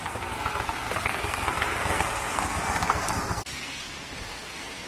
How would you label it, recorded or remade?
remade